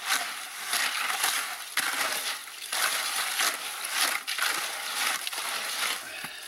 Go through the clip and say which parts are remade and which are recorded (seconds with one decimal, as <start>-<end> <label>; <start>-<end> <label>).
0.0-6.5 recorded